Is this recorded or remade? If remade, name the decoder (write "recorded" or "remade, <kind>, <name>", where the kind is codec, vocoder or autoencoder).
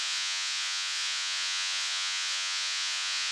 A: remade, vocoder, Vocos